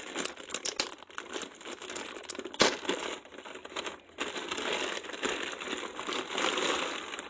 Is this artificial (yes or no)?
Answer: no